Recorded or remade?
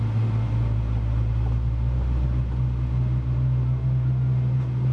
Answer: recorded